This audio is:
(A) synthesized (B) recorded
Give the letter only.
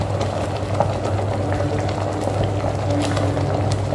B